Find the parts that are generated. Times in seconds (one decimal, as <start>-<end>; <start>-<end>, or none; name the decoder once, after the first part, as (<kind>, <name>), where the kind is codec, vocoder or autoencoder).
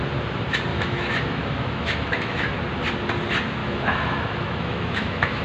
0.7-2.6 (autoencoder, DAC-VAE); 3.6-5.4